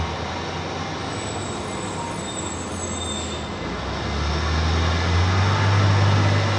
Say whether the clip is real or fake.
real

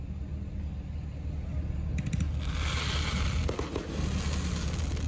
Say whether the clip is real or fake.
real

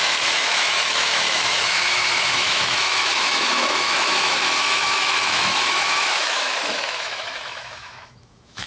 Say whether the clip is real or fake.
fake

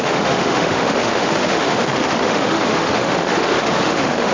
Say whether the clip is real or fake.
fake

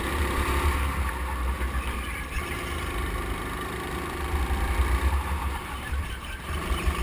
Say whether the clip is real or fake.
fake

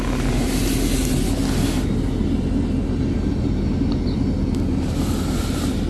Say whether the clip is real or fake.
real